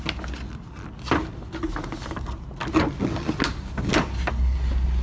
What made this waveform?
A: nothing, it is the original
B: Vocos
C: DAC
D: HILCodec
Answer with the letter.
A